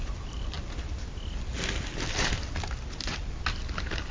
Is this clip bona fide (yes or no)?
yes